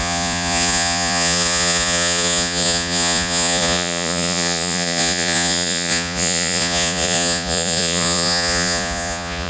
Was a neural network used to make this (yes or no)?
yes